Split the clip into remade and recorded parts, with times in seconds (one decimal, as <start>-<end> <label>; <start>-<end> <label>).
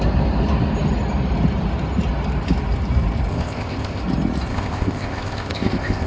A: 0.0-3.3 recorded; 3.3-4.0 remade; 4.0-4.5 recorded; 4.5-6.1 remade